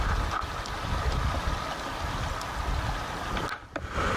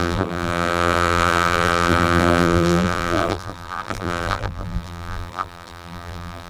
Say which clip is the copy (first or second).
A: second